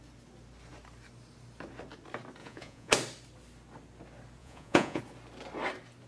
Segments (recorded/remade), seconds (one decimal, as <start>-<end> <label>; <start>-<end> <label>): 0.0-2.4 recorded; 2.4-2.9 remade; 2.9-4.4 recorded; 4.4-5.0 remade; 5.0-6.1 recorded